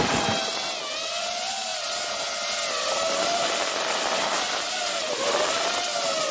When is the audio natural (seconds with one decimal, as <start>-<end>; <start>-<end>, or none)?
0.0-6.3